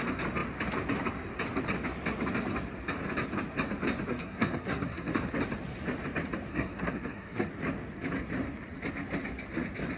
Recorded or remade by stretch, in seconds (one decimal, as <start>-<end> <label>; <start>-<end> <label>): 0.0-4.1 recorded; 4.1-5.1 remade; 5.1-6.5 recorded; 6.5-7.5 remade; 7.5-10.0 recorded